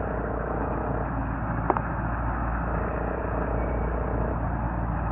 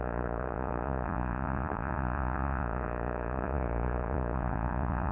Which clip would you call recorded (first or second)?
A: first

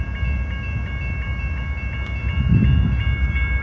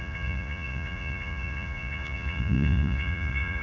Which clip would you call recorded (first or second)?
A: first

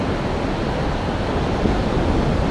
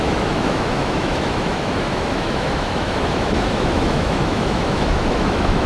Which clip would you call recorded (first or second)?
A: first